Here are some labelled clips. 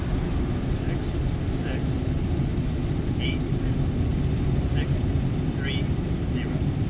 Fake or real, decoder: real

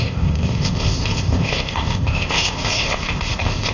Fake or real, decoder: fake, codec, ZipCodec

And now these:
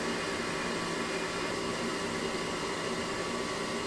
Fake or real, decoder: real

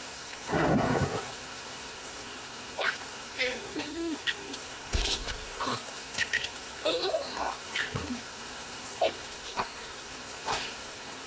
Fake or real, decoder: fake, codec, SNAC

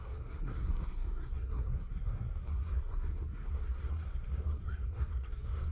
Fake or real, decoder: fake, codec, SNAC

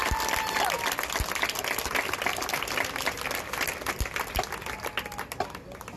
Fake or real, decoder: real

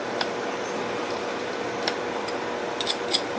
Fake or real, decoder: real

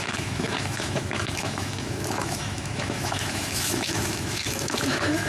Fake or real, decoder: fake, autoencoder, DAC-VAE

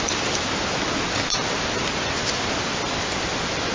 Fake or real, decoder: real